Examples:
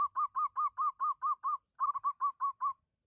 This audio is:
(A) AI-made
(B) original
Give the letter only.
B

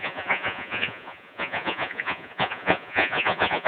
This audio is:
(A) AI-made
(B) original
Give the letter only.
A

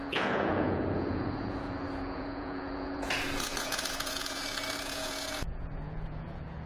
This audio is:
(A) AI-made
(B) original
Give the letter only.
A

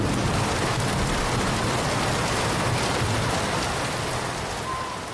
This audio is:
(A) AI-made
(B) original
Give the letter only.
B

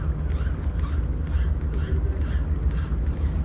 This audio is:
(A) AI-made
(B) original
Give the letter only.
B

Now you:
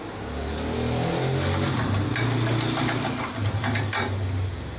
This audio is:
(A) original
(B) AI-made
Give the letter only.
A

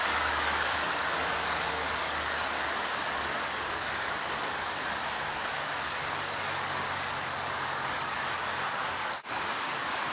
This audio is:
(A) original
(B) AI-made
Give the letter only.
B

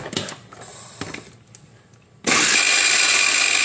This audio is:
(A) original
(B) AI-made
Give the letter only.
A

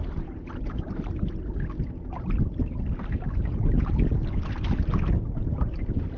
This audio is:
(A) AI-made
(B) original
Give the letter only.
B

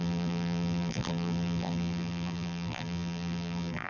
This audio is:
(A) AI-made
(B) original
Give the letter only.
A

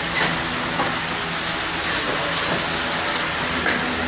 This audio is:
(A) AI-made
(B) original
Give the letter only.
B